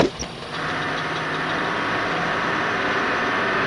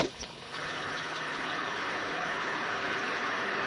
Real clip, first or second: first